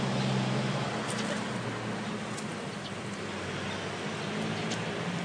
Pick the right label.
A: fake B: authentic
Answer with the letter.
B